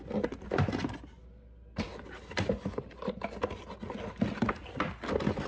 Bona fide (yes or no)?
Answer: yes